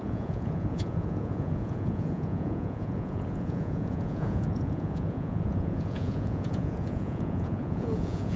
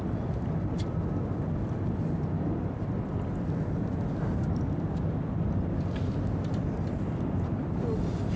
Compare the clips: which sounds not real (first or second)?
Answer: first